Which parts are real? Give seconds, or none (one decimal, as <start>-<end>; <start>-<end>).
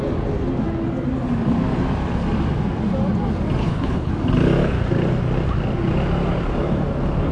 0.0-3.6; 4.1-7.3